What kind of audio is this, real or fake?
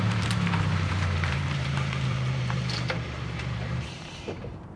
fake